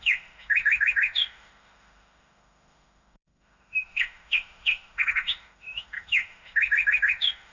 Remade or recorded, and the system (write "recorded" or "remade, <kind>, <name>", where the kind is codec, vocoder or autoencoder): remade, autoencoder, DAC-VAE